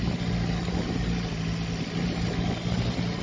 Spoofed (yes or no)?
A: no